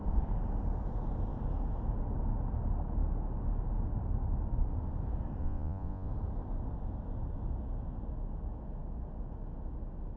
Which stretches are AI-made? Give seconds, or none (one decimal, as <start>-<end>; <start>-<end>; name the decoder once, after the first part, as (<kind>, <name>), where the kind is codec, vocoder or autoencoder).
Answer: 5.4-6.1 (vocoder, Vocos)